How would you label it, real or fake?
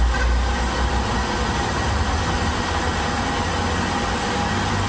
real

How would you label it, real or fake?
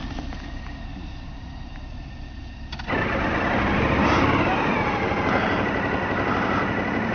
real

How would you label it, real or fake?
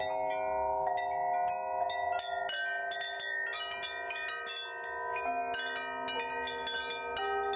real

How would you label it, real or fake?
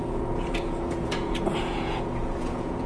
fake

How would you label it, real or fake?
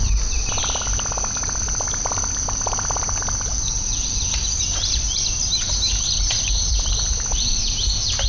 real